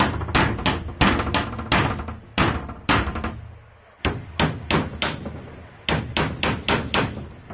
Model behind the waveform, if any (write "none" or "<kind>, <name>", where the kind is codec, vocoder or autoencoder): none